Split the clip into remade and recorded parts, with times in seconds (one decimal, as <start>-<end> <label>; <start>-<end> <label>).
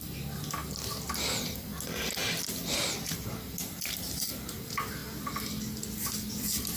0.0-6.8 recorded